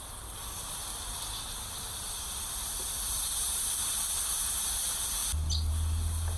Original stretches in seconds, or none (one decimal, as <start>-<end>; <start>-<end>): 0.0-0.9; 3.8-6.4